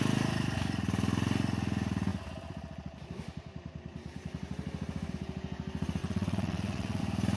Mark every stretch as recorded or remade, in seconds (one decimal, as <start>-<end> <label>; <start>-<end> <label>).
0.0-6.0 recorded; 6.0-7.0 remade; 7.0-7.4 recorded